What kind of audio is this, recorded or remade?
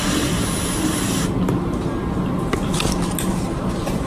recorded